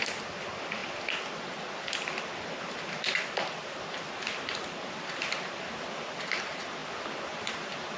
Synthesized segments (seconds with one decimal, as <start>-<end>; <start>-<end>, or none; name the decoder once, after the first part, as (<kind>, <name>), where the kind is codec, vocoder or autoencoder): none